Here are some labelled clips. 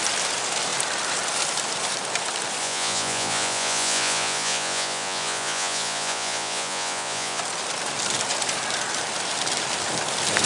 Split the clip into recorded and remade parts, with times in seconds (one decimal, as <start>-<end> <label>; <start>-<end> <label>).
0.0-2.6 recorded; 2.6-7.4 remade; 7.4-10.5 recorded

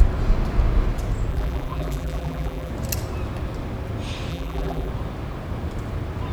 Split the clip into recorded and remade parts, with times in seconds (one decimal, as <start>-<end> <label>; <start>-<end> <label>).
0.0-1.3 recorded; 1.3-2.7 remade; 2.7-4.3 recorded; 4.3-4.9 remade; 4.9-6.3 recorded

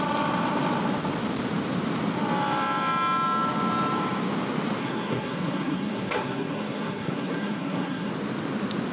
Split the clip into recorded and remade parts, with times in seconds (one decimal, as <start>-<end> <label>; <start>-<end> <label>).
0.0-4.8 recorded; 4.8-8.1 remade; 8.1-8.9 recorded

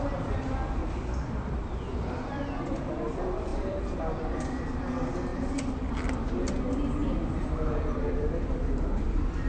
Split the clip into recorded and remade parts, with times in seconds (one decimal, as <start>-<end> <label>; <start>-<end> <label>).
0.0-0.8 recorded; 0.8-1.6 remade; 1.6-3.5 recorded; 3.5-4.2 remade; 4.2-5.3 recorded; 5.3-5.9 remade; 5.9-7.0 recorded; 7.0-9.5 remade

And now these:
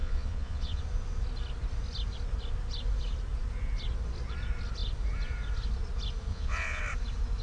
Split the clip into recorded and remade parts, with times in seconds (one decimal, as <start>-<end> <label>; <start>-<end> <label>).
0.0-0.8 remade; 0.8-6.3 recorded; 6.3-6.8 remade; 6.8-7.4 recorded

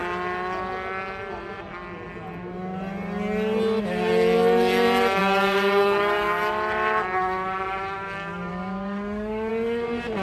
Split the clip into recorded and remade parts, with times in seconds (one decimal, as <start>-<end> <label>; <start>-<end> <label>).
0.0-5.2 recorded; 5.2-6.5 remade; 6.5-8.5 recorded; 8.5-9.5 remade; 9.5-10.2 recorded

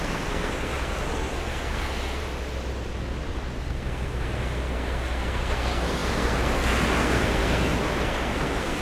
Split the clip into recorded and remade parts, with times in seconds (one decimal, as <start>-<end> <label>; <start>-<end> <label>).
0.0-2.2 remade; 2.2-3.6 recorded; 3.6-8.8 remade